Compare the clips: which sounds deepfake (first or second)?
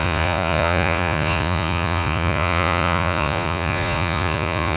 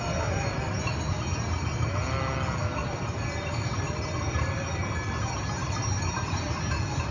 first